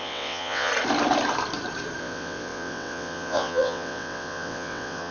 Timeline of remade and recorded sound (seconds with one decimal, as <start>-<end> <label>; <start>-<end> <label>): 0.0-0.7 remade; 0.7-2.0 recorded; 2.0-5.1 remade